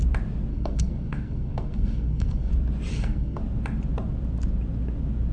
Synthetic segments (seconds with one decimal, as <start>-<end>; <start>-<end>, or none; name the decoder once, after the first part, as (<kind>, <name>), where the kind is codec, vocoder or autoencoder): 0.5-2.5 (codec, SNAC); 2.9-3.4